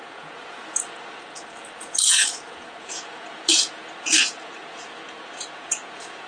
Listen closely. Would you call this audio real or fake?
fake